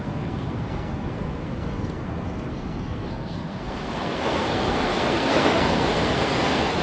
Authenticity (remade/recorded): remade